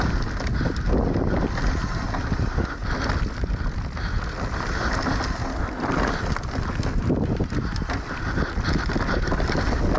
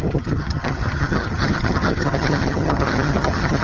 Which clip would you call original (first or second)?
first